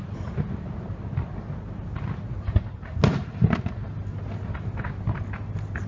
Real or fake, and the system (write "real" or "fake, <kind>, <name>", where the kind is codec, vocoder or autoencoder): real